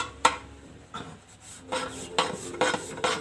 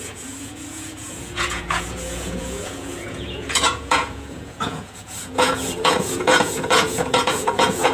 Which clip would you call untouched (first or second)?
first